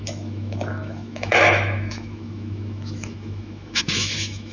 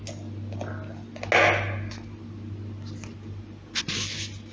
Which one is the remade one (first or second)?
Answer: first